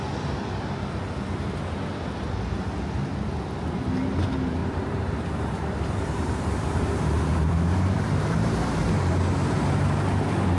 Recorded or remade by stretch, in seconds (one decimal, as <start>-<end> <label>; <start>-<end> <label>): 0.0-4.6 recorded; 4.6-8.9 remade; 8.9-10.6 recorded